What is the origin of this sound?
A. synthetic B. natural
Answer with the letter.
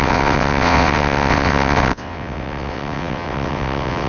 A